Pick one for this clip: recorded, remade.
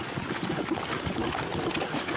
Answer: recorded